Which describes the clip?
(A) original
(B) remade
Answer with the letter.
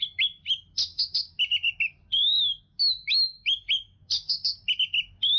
A